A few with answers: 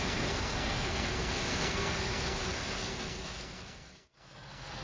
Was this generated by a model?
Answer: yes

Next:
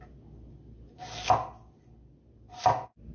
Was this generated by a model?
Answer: no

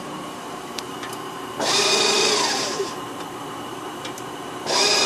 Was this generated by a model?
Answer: yes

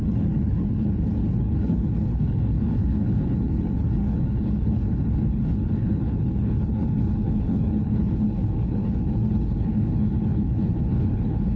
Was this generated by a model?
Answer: yes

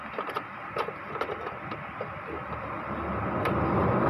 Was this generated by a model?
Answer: no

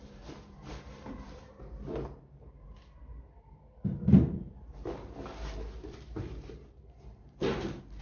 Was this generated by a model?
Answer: yes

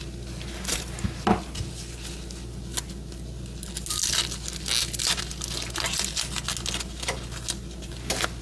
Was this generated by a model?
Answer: no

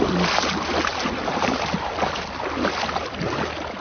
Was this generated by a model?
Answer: no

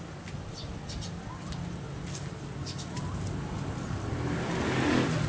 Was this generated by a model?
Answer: no